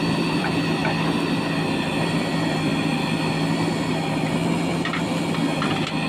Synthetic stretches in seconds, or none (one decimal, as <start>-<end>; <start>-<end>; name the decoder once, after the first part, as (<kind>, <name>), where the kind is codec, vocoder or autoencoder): 0.0-0.8 (vocoder, BigVGAN v2); 2.0-2.7